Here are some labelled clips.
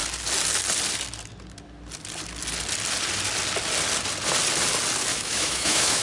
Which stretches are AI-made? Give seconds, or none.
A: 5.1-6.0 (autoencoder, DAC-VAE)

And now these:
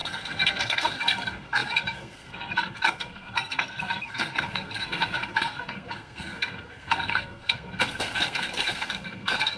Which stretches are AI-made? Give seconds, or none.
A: 0.0-9.6 (codec, SNAC)

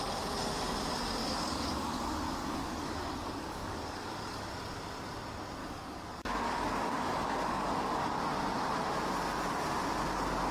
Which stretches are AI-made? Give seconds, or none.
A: 1.2-4.5 (codec, DAC); 5.6-8.1

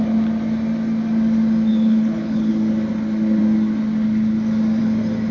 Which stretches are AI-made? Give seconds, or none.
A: 1.7-2.5 (codec, HILCodec)

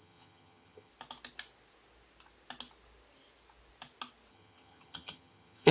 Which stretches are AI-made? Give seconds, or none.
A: 0.0-0.9 (vocoder, HiFi-GAN); 4.3-5.7